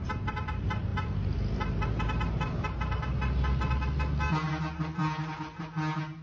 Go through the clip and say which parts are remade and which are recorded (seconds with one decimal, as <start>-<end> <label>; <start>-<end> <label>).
0.0-6.2 recorded

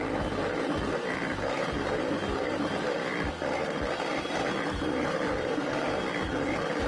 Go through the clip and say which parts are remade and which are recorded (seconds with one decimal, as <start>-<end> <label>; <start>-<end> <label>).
0.0-6.9 recorded

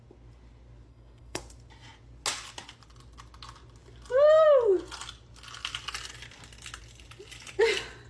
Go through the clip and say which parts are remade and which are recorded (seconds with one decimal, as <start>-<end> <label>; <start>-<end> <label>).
0.0-0.9 recorded; 0.9-1.4 remade; 1.4-8.1 recorded

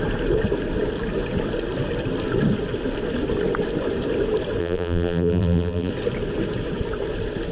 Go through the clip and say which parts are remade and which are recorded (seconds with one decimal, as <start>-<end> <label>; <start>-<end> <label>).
0.0-4.6 recorded; 4.6-5.9 remade; 5.9-7.5 recorded

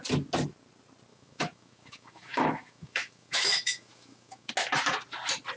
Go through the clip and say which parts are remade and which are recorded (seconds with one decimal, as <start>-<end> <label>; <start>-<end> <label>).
0.0-1.1 recorded; 1.1-4.5 remade; 4.5-5.6 recorded

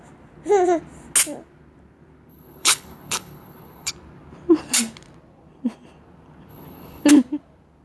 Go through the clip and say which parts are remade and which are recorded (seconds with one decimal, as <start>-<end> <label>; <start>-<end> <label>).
0.0-2.3 recorded; 2.3-3.9 remade; 3.9-6.5 recorded; 6.5-7.1 remade; 7.1-7.8 recorded